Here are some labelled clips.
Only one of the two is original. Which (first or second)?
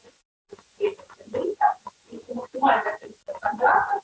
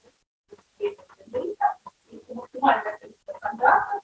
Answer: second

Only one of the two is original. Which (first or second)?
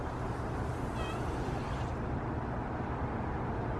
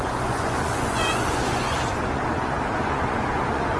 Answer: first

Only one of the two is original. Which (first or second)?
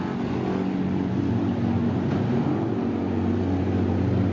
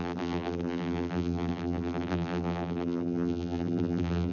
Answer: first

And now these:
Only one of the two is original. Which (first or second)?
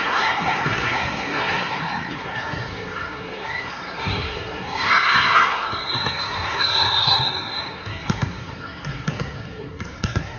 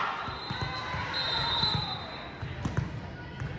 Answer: second